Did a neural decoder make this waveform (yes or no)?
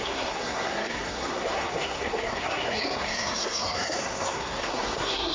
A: yes